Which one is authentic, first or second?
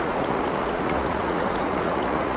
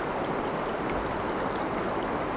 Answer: second